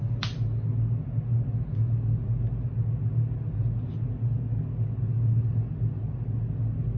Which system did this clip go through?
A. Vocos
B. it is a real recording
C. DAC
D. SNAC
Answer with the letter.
B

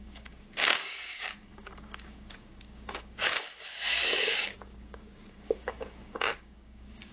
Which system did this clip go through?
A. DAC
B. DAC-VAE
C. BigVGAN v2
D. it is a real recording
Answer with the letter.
A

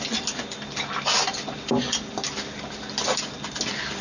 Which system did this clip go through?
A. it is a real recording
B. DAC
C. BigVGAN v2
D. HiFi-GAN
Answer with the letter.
A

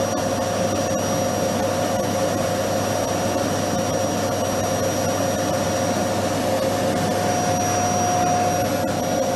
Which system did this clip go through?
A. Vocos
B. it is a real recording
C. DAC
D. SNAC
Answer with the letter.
B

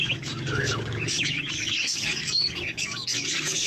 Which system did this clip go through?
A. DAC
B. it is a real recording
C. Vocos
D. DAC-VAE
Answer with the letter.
A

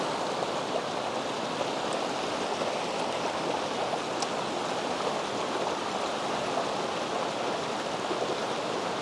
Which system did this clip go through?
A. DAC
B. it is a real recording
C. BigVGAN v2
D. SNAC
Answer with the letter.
B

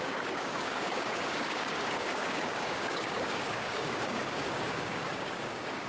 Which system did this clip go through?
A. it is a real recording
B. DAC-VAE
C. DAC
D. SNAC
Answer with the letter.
C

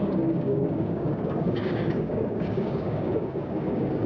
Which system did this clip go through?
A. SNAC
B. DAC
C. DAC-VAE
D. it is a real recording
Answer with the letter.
B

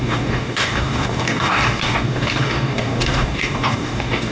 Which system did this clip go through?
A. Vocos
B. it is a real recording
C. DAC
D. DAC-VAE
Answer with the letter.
C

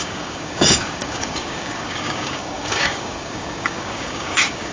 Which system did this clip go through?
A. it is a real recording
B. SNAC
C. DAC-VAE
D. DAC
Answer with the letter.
D